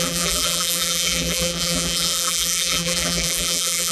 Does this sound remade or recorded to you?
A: remade